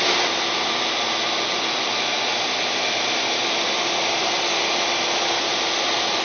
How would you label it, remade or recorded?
recorded